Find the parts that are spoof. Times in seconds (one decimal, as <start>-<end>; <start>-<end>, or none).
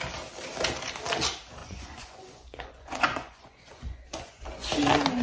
1.6-4.7